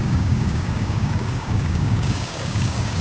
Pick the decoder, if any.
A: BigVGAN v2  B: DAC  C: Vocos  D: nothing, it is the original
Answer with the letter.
B